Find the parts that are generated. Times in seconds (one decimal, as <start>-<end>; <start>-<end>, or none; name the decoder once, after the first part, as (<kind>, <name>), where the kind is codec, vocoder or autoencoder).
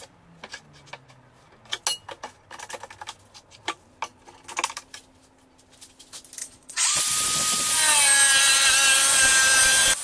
6.4-7.0 (vocoder, Vocos)